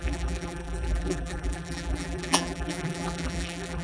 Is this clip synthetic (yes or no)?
yes